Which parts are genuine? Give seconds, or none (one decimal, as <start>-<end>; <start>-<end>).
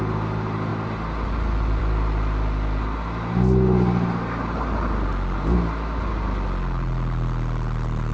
0.0-8.1